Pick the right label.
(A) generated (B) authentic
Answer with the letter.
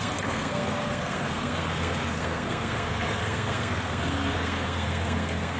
A